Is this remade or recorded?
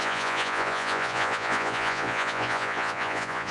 remade